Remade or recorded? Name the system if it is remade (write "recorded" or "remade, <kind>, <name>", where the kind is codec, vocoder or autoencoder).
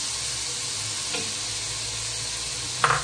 recorded